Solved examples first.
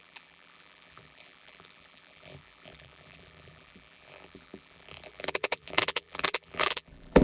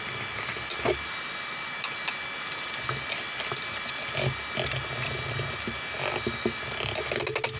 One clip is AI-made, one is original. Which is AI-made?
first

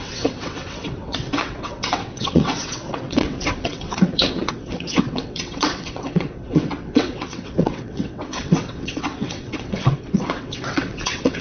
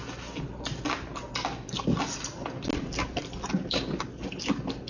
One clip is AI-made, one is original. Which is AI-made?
first